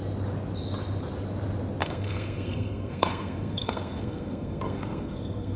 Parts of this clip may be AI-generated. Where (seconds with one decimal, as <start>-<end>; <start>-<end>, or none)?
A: 1.8-5.6